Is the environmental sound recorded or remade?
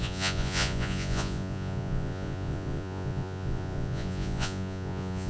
remade